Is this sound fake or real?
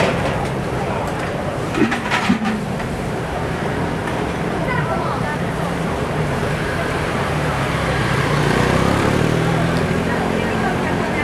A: fake